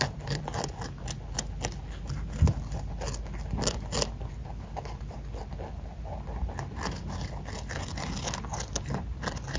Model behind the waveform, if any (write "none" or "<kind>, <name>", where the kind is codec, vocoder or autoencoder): none